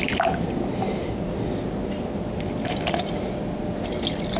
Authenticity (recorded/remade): recorded